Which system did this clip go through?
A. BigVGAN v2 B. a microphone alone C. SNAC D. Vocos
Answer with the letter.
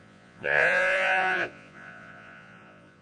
D